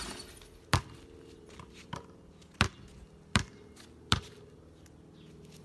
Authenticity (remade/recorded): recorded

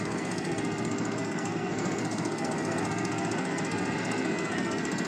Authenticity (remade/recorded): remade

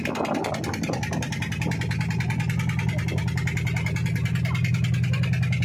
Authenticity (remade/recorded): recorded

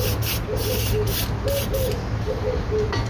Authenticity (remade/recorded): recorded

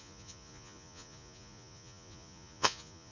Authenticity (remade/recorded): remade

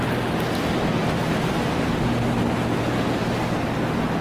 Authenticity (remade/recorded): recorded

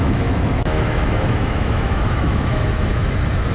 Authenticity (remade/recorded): remade